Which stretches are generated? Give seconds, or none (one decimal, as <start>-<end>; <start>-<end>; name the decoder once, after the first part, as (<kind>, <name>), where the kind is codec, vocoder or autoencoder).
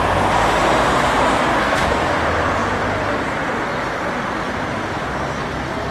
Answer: 1.5-2.1 (codec, SNAC)